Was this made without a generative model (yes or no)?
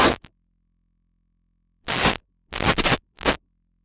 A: yes